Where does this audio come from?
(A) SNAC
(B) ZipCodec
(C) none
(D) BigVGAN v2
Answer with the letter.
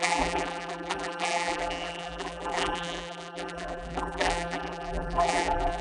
D